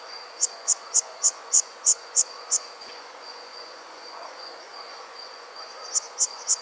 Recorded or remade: remade